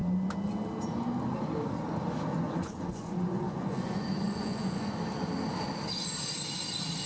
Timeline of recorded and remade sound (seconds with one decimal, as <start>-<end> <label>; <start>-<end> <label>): 0.0-2.3 recorded; 2.3-4.9 remade; 4.9-7.1 recorded